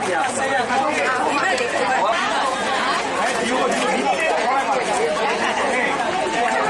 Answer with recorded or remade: remade